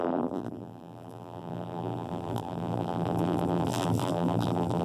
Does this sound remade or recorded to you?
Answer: remade